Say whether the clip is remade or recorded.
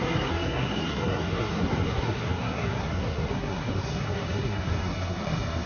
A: remade